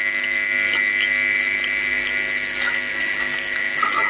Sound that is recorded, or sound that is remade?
recorded